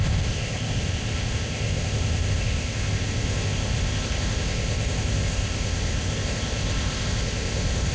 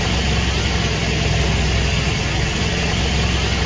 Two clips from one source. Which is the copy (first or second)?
first